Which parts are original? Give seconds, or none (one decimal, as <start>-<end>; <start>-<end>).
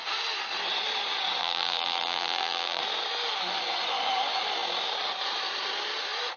0.0-1.4; 2.8-6.4